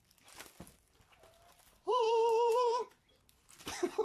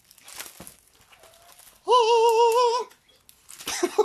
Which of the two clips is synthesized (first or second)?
first